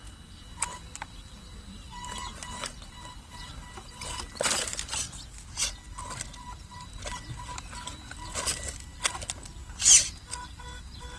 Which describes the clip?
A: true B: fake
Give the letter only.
A